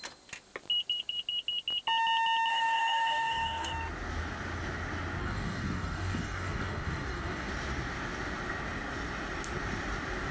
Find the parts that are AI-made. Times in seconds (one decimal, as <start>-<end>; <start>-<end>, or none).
2.5-3.7; 5.2-7.5